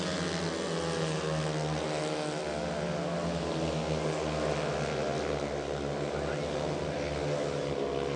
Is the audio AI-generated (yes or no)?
no